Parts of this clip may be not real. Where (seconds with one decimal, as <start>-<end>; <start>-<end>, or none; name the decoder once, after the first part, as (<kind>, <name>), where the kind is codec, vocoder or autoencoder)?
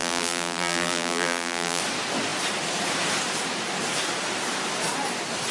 0.0-1.8 (vocoder, BigVGAN v2)